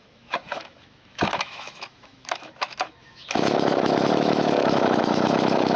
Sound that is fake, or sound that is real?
fake